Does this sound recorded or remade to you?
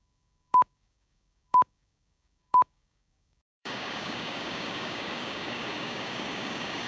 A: remade